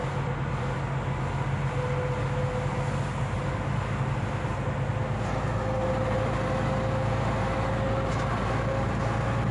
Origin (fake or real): real